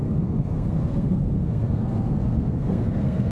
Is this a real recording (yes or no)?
no